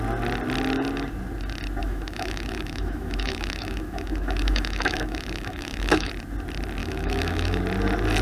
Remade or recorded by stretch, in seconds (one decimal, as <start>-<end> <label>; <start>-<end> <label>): 0.0-1.8 recorded; 1.8-6.1 remade; 6.1-6.8 recorded; 6.8-7.6 remade; 7.6-8.2 recorded